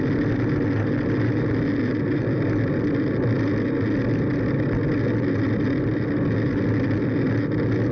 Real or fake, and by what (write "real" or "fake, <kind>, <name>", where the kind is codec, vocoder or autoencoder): real